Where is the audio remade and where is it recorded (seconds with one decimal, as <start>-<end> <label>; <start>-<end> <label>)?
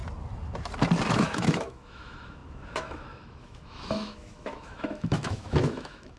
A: 0.0-1.1 recorded; 1.1-6.2 remade